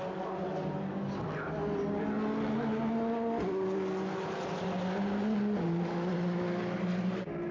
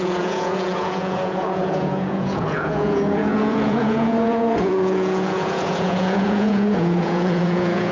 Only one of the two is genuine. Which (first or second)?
first